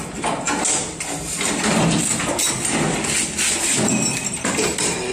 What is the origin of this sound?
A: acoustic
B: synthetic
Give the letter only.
A